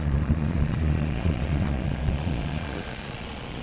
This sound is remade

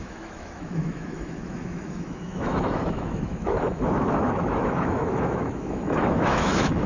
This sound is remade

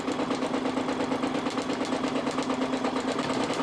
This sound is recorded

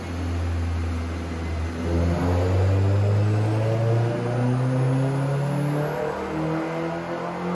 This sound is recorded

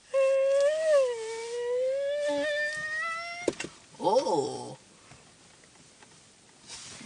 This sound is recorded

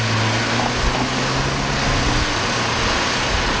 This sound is recorded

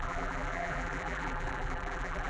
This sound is remade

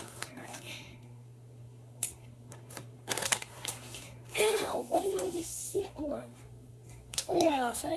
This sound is remade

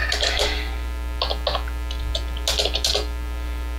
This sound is recorded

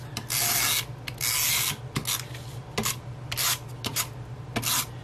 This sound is recorded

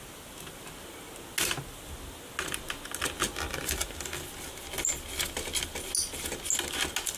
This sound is recorded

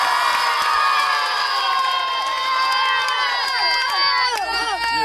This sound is recorded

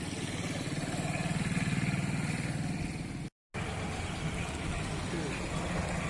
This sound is recorded